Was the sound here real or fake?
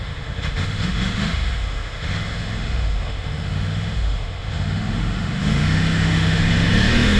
fake